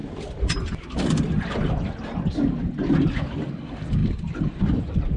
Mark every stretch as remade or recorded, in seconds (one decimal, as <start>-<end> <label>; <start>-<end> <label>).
0.0-5.2 recorded